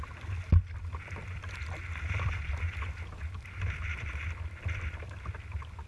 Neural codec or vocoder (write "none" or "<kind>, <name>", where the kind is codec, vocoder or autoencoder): none